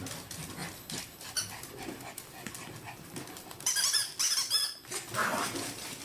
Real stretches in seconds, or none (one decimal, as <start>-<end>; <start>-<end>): 0.0-0.6; 4.2-5.2